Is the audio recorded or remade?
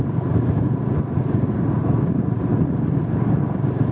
remade